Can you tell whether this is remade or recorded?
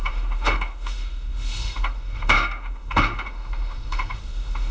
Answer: remade